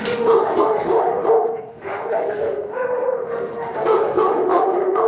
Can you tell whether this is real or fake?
fake